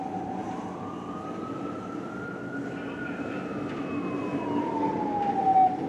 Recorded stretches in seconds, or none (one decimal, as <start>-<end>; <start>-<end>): 0.0-5.9